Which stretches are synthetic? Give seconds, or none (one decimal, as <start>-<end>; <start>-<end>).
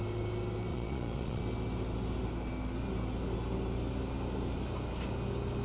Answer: 0.7-1.4